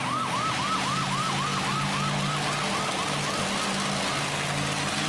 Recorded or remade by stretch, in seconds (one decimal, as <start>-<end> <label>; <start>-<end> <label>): 0.0-5.1 recorded